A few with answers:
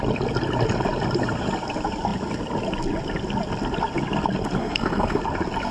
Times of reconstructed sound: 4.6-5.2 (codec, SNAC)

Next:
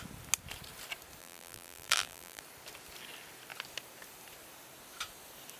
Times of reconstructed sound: 1.2-2.4 (vocoder, BigVGAN v2)

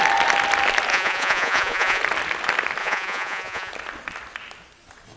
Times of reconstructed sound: 0.9-2.0 (vocoder, Vocos); 2.8-3.7

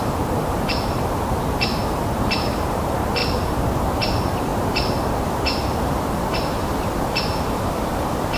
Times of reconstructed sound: 0.0-3.2 (vocoder, BigVGAN v2); 3.8-8.4

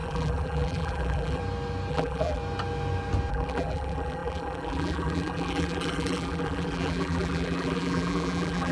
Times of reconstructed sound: 0.0-1.4 (vocoder, BigVGAN v2); 1.9-2.4; 3.3-8.7

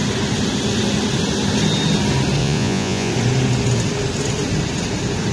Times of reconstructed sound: 2.4-3.1 (vocoder, Vocos)

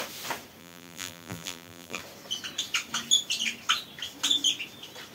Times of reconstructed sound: 0.6-2.0 (vocoder, BigVGAN v2)